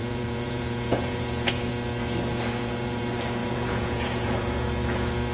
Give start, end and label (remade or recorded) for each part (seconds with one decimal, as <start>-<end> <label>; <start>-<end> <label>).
0.0-1.7 remade; 1.7-2.3 recorded; 2.3-3.0 remade; 3.0-3.4 recorded; 3.4-4.7 remade; 4.7-5.3 recorded